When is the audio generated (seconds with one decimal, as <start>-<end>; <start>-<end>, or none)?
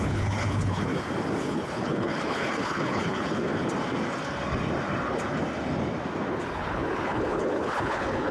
0.0-0.9; 1.4-3.5; 6.3-8.3